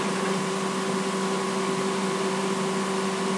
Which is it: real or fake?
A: fake